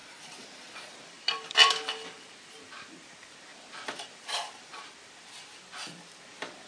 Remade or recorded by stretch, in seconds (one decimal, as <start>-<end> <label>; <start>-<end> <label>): 0.0-0.9 remade; 0.9-6.7 recorded